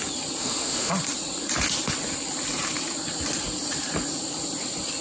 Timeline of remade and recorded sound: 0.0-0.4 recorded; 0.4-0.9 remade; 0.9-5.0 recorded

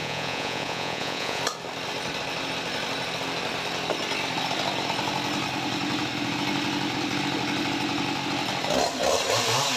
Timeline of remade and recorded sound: 0.0-1.4 remade; 1.4-9.8 recorded

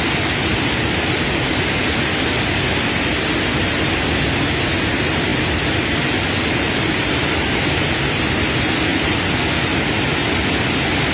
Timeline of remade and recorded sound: 0.0-11.1 recorded

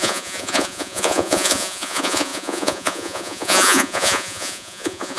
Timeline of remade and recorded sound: 0.0-5.2 remade

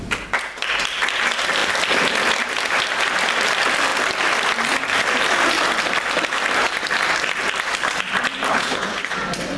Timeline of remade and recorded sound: 0.0-8.5 recorded; 8.5-9.1 remade; 9.1-9.6 recorded

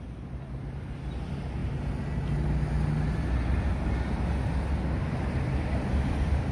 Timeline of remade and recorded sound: 0.0-6.5 recorded

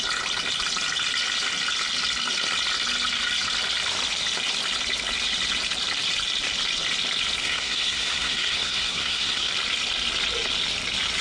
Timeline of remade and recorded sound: 0.0-7.4 recorded; 7.4-9.5 remade; 9.5-11.2 recorded